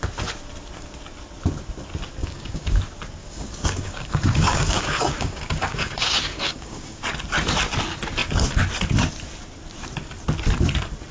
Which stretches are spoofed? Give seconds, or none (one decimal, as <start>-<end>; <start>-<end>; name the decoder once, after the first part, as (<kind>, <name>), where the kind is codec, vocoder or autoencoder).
2.2-2.8 (codec, DAC); 3.2-7.0